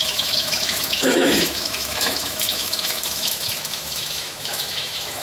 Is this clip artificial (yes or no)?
yes